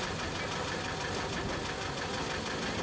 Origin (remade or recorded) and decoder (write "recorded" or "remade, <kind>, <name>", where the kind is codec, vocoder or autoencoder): recorded